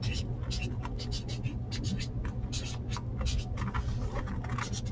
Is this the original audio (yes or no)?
yes